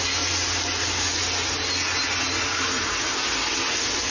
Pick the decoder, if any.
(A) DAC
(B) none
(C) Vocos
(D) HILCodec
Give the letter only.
B